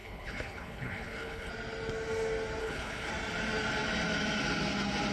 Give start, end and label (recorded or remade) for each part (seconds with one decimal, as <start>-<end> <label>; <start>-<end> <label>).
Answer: 0.0-1.5 remade; 1.5-2.6 recorded; 2.6-3.1 remade; 3.1-5.1 recorded